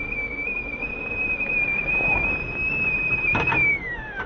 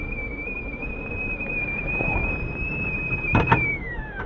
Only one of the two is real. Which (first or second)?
first